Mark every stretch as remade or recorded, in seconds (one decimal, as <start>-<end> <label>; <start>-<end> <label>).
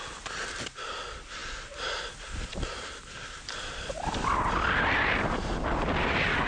0.0-6.5 recorded